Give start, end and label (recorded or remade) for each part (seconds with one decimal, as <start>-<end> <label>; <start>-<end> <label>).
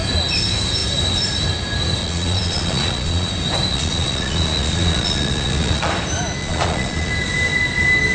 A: 0.0-2.0 recorded; 2.0-3.3 remade; 3.3-3.7 recorded; 3.7-5.9 remade; 5.9-6.4 recorded; 6.4-7.1 remade; 7.1-8.1 recorded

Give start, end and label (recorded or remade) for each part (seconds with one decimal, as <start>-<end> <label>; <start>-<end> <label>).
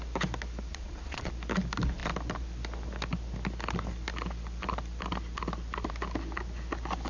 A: 0.0-0.7 recorded; 0.7-1.3 remade; 1.3-7.1 recorded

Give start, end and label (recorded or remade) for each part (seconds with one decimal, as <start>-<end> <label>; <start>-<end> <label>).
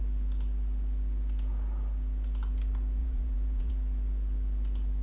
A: 0.0-3.0 recorded; 3.0-3.7 remade; 3.7-5.0 recorded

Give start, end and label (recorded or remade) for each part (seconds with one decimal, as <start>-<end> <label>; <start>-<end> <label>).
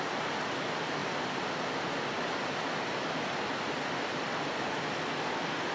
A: 0.0-5.7 recorded